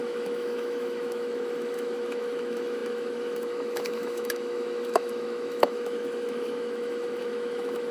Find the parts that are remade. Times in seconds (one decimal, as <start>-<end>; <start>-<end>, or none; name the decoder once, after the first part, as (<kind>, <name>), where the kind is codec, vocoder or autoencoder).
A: 0.0-7.9 (autoencoder, DAC-VAE)

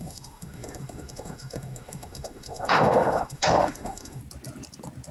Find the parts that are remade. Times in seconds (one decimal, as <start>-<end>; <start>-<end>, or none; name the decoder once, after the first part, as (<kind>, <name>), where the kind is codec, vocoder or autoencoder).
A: 0.0-4.2 (autoencoder, DAC-VAE)